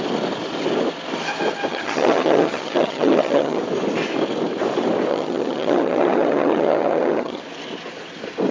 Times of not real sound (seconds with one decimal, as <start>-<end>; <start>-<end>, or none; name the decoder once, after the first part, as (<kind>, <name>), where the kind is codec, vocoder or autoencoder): 1.7-3.6 (vocoder, HiFi-GAN); 5.1-7.4